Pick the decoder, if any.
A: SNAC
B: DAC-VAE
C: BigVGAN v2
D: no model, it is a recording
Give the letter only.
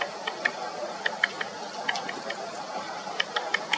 D